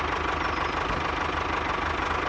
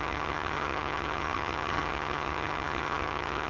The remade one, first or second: second